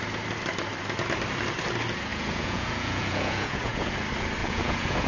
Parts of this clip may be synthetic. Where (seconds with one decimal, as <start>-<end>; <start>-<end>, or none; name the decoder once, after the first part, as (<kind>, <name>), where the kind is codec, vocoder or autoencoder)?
2.1-3.9 (vocoder, Vocos); 4.4-5.1